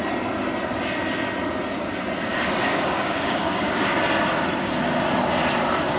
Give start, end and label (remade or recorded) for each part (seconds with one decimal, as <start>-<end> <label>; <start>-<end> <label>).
0.0-2.3 recorded; 2.3-4.0 remade; 4.0-6.0 recorded